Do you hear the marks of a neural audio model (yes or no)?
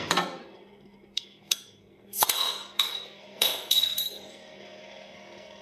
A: yes